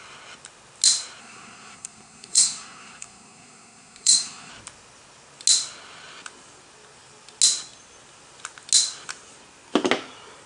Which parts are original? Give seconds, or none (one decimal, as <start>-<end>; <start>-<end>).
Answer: 0.0-1.2; 4.5-10.5